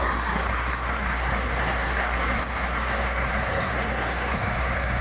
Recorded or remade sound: remade